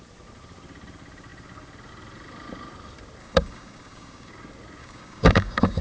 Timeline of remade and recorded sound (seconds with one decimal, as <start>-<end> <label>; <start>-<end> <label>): 0.0-3.2 recorded; 3.2-4.3 remade; 4.3-4.8 recorded; 4.8-5.8 remade